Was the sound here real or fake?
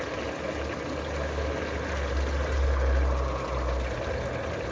real